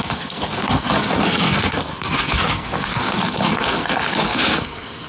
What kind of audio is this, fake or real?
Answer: fake